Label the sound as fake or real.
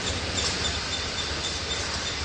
real